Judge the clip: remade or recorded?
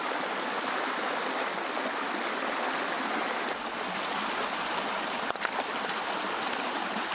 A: recorded